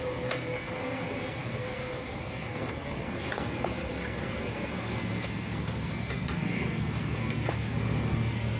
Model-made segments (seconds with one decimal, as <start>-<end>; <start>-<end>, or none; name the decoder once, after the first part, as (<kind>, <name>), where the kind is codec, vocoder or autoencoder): 0.0-8.6 (codec, SNAC)